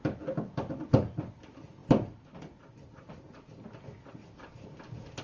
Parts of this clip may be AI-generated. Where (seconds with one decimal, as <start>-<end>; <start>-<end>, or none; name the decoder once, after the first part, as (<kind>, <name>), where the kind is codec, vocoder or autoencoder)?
none